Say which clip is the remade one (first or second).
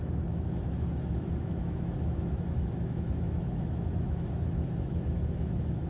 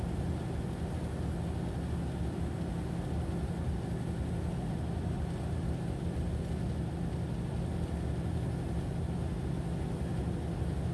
first